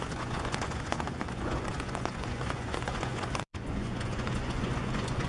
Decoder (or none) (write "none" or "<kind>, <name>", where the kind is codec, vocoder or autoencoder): vocoder, Vocos